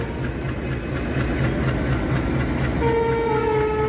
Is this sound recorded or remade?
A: recorded